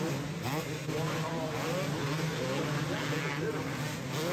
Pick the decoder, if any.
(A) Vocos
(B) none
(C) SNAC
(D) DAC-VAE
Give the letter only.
B